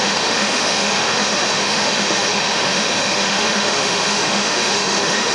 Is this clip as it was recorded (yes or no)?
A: no